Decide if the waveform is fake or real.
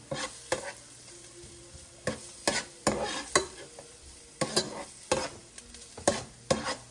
real